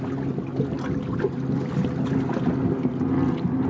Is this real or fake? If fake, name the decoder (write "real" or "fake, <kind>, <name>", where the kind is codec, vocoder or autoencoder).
real